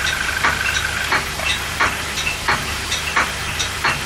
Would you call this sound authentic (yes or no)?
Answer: no